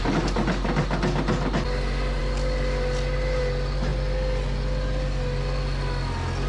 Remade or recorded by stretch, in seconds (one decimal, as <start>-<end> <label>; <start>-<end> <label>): 0.0-6.5 recorded